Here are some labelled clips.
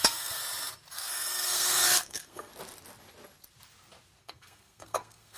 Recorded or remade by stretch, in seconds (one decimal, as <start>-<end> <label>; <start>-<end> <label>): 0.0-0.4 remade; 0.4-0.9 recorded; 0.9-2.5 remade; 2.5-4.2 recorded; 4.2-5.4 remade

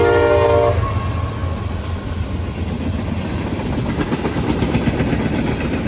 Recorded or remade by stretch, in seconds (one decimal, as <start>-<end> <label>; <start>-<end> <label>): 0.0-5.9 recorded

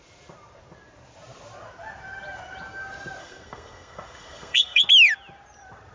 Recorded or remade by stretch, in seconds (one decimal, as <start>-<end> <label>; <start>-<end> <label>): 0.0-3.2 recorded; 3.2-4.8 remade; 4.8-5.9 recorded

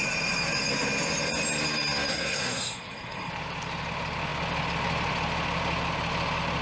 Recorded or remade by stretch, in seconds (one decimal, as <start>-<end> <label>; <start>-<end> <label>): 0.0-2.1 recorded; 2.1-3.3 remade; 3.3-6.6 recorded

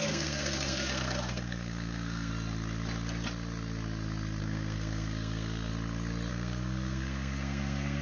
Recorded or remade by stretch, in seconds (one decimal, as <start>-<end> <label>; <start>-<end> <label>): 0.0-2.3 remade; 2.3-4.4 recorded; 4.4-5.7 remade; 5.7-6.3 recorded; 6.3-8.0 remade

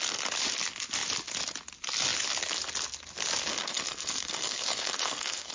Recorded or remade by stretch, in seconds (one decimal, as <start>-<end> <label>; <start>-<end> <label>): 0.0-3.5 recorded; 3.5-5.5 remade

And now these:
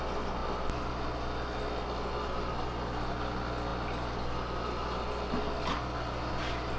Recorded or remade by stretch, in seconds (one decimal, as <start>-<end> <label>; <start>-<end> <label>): 0.0-6.8 recorded